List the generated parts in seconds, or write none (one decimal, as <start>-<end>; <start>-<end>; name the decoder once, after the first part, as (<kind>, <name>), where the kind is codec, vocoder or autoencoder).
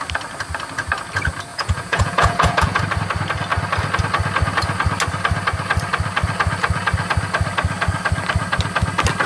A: 1.5-2.8 (vocoder, Vocos)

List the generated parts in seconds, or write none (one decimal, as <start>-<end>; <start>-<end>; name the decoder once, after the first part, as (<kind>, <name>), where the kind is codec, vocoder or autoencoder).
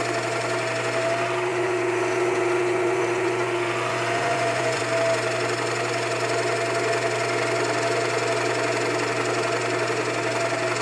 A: 1.5-4.8 (vocoder, Vocos)